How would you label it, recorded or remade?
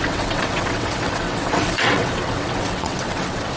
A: remade